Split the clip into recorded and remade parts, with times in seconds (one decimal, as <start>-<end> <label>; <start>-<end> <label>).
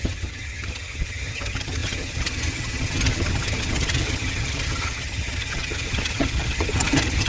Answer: 0.0-7.3 remade